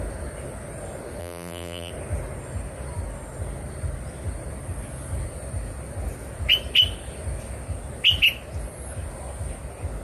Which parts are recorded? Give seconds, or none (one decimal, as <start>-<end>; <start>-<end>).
0.0-1.2; 1.9-10.0